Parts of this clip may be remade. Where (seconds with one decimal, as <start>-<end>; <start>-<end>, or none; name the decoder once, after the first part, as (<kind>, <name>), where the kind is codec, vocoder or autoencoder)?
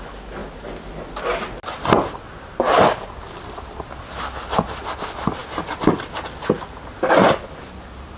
none